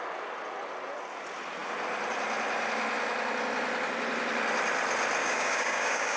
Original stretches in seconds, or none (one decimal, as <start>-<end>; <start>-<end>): 0.0-5.2